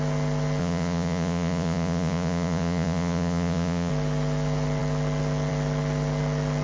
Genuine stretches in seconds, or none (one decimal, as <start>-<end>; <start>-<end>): 0.0-0.6; 3.9-6.6